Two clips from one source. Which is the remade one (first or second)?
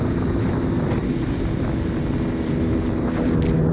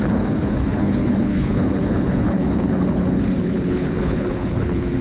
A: second